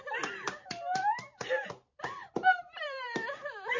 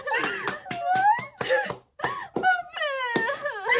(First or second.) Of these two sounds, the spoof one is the first